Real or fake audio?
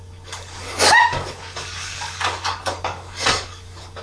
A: fake